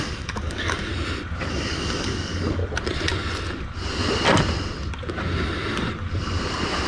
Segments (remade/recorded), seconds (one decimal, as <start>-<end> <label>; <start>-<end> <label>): 0.0-0.9 remade; 0.9-1.5 recorded; 1.5-2.6 remade; 2.6-6.9 recorded